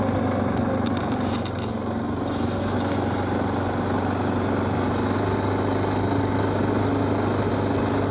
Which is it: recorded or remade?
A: recorded